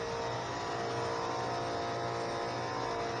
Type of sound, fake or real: real